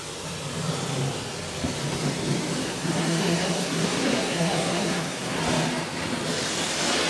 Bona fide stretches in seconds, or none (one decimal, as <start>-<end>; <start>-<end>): 0.0-2.6; 5.4-7.1